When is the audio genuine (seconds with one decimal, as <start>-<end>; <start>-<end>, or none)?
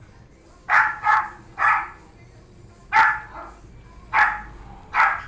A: 0.0-0.6; 1.2-5.3